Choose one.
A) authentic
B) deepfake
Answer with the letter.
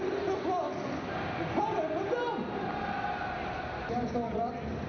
A